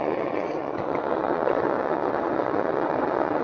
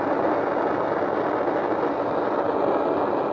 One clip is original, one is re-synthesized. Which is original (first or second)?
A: second